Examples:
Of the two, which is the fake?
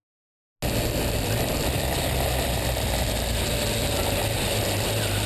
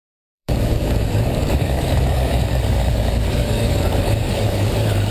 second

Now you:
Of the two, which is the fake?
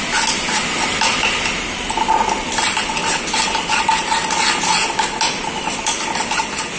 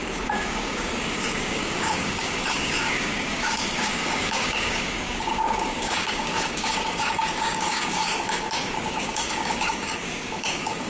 second